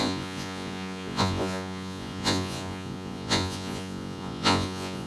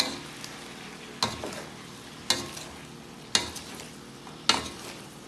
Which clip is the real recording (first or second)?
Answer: second